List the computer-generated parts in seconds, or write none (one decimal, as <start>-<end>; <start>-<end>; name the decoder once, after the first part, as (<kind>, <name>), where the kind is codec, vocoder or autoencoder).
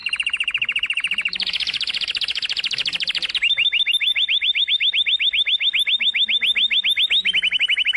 0.0-3.3 (vocoder, BigVGAN v2); 4.1-4.7